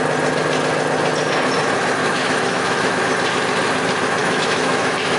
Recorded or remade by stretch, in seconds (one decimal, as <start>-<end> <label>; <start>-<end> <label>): 0.0-2.0 recorded; 2.0-3.0 remade; 3.0-4.2 recorded; 4.2-5.2 remade